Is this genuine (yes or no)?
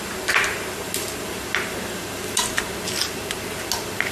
yes